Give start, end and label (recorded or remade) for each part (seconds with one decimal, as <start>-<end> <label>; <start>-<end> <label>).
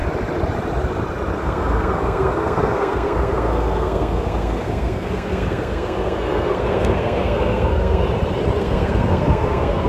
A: 0.0-1.4 recorded; 1.4-8.0 remade; 8.0-8.6 recorded; 8.6-9.9 remade